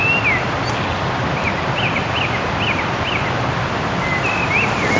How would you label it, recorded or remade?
recorded